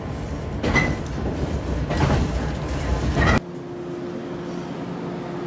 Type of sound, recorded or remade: recorded